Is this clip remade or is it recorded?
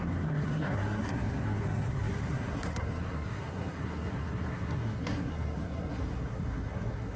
remade